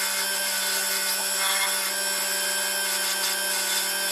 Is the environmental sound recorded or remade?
recorded